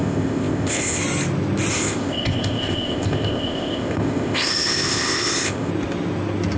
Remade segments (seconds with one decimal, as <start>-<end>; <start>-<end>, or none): 0.0-1.0; 1.7-5.7